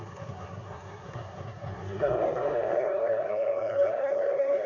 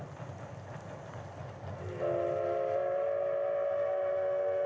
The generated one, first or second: first